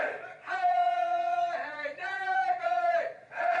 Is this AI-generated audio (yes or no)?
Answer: yes